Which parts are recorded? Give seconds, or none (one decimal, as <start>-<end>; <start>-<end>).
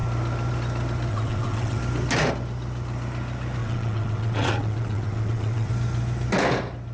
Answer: 0.0-1.1; 1.8-3.6; 5.7-6.9